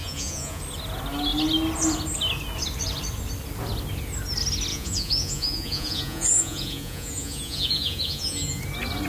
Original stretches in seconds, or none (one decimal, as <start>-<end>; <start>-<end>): 0.6-4.7; 8.6-9.1